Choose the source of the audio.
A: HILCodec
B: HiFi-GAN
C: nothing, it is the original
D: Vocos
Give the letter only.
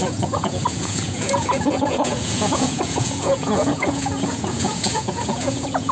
D